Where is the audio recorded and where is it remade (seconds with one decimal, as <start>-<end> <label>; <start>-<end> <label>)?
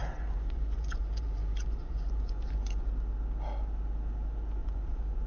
0.0-2.9 remade; 2.9-4.6 recorded; 4.6-5.3 remade